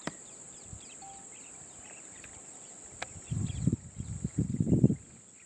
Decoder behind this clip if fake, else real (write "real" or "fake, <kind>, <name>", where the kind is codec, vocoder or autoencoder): real